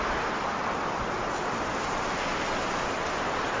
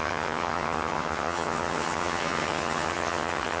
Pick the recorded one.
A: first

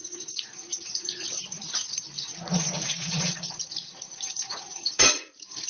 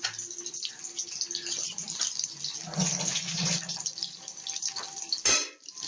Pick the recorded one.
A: second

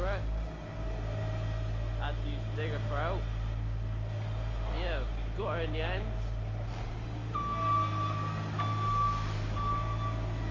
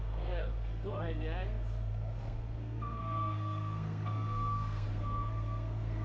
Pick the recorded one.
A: first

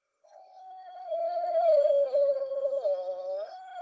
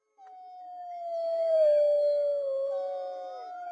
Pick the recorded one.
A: second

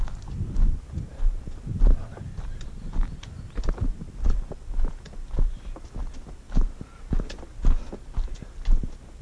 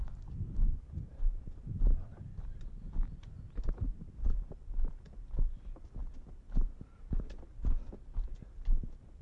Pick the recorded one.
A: first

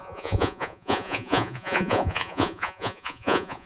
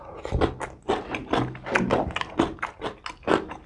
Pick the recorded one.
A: second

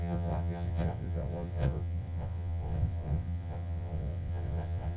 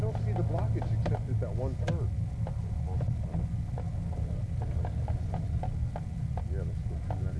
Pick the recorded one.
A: second